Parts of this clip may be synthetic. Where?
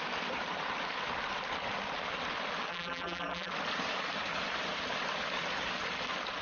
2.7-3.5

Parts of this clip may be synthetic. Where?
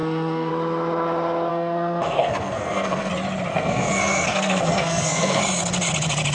0.0-0.5; 1.5-3.1; 3.5-5.4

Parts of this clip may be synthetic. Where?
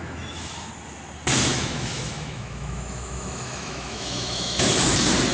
0.0-0.7; 1.5-4.7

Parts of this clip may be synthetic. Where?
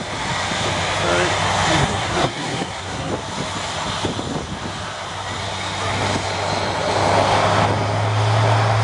1.8-3.1